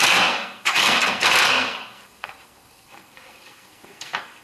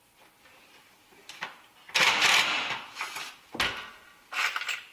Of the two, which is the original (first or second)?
second